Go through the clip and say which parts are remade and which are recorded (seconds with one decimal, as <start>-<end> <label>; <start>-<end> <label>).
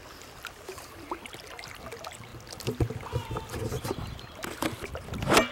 0.0-5.5 recorded